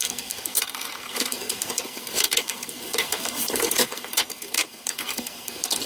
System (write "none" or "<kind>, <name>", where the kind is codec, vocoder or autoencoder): codec, SNAC